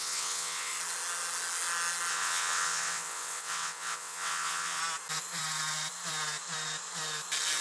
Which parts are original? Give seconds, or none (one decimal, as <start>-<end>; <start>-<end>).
0.7-2.1; 4.8-7.6